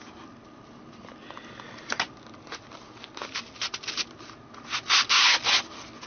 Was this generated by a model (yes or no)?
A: no